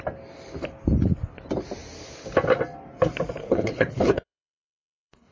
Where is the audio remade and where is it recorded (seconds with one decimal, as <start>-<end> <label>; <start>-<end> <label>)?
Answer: 0.0-3.4 recorded; 3.4-5.3 remade